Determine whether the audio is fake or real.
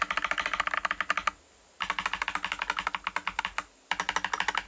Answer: real